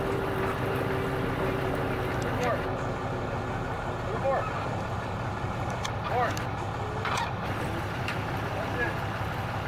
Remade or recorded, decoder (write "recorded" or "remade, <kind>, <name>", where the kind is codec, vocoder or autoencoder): recorded